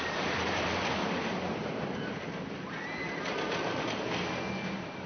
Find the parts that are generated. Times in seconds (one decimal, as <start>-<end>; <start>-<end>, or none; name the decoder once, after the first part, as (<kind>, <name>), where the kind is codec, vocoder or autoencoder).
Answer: 1.0-2.2 (vocoder, BigVGAN v2)